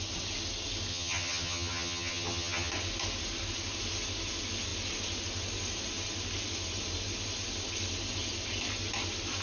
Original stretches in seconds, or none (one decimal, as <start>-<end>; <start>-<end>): 0.0-0.9; 2.7-9.4